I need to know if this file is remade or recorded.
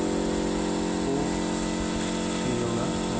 recorded